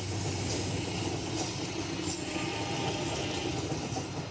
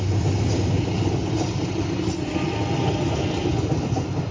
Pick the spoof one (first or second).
second